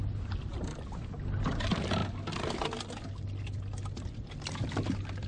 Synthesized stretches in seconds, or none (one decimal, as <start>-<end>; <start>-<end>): none